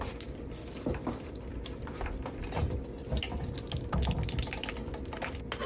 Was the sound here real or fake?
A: real